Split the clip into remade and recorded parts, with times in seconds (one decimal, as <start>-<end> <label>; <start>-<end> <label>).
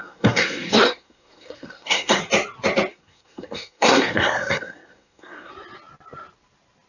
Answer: 0.0-2.2 remade; 2.2-2.9 recorded; 2.9-5.5 remade; 5.5-6.9 recorded